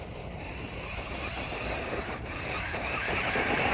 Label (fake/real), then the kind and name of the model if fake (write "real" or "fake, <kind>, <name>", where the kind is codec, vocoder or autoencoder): fake, vocoder, BigVGAN v2